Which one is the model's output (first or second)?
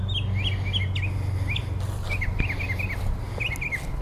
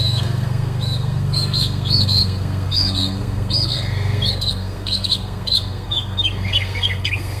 second